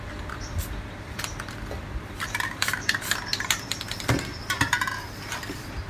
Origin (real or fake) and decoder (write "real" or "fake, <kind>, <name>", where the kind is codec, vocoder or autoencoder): fake, vocoder, BigVGAN v2